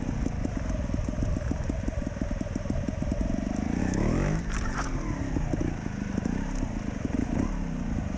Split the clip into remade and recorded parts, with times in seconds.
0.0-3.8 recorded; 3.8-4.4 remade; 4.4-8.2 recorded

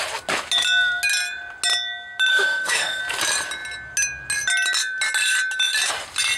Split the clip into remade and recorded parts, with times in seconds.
0.0-2.3 recorded; 2.3-3.0 remade; 3.0-6.4 recorded

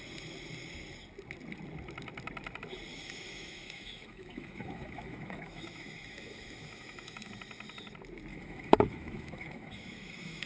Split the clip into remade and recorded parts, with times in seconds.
0.0-2.9 recorded; 2.9-7.3 remade; 7.3-8.3 recorded; 8.3-10.5 remade

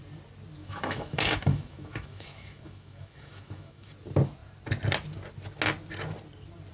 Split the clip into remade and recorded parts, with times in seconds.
0.0-0.6 recorded; 0.6-3.9 remade; 3.9-6.7 recorded

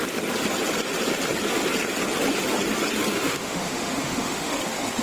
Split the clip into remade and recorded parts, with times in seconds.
0.0-3.1 recorded; 3.1-4.6 remade; 4.6-5.0 recorded

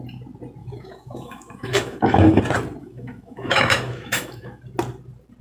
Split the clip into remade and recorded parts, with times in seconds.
0.0-0.6 recorded; 0.6-2.4 remade; 2.4-2.8 recorded; 2.8-4.6 remade; 4.6-5.4 recorded